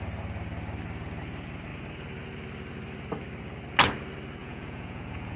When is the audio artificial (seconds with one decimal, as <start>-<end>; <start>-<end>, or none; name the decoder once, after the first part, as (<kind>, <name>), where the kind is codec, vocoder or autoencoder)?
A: 4.4-5.4 (vocoder, Vocos)

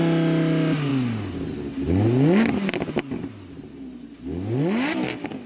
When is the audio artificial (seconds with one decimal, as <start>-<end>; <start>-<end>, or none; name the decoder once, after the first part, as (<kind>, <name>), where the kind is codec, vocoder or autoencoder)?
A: none